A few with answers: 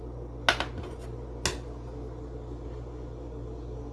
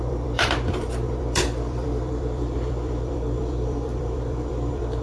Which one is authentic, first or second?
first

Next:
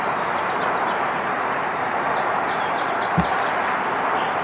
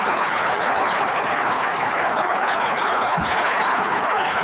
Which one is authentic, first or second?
first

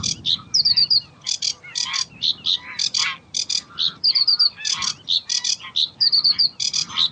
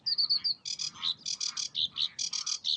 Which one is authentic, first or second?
second